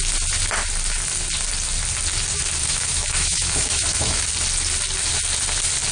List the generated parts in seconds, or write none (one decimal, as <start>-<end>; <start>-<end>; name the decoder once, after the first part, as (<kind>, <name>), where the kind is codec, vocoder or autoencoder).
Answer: 2.6-4.2 (autoencoder, DAC-VAE)